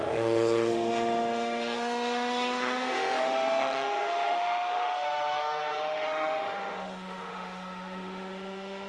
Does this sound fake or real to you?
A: fake